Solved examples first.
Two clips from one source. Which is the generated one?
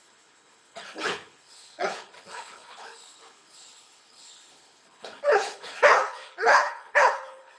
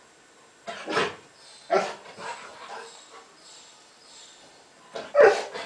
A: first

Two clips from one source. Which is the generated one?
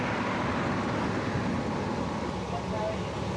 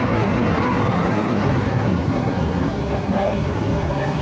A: second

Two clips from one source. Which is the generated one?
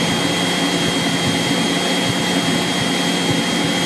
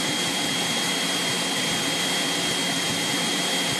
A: second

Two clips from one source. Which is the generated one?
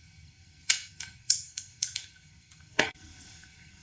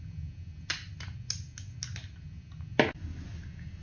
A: first